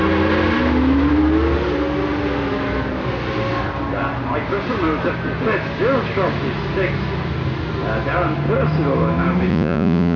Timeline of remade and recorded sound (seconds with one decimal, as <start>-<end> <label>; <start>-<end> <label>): 0.0-9.5 recorded; 9.5-10.2 remade